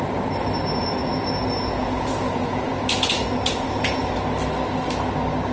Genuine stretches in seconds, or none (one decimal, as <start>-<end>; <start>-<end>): 0.0-0.8; 4.1-5.5